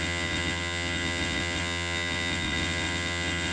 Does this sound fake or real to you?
fake